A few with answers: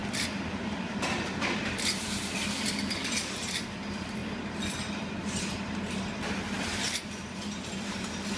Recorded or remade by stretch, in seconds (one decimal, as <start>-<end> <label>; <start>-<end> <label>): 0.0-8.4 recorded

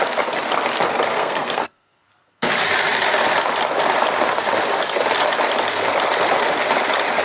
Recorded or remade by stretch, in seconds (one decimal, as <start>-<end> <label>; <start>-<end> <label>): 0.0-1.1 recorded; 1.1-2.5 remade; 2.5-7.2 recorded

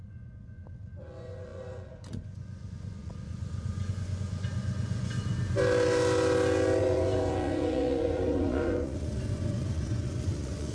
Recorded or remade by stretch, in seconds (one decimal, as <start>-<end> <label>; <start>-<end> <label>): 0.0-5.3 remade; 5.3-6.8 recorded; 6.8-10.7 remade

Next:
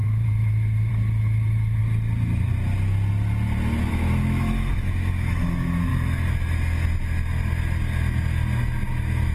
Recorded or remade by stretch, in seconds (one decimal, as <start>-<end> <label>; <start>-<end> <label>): 0.0-1.8 remade; 1.8-3.9 recorded; 3.9-5.9 remade; 5.9-8.9 recorded; 8.9-9.3 remade